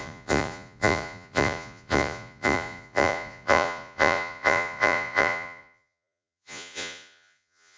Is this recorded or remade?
remade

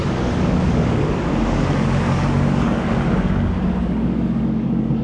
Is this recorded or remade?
remade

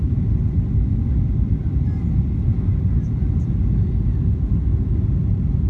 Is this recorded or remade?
remade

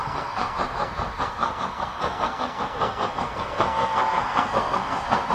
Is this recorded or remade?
remade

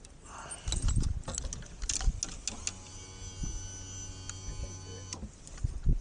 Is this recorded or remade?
recorded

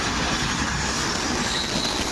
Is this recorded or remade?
recorded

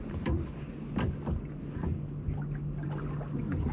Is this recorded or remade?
recorded